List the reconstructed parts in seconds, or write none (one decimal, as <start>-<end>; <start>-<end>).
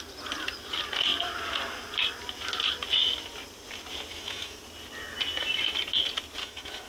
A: 4.1-4.6; 6.4-6.9